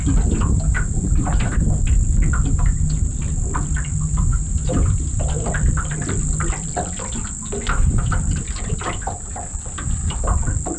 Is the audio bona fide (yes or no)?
yes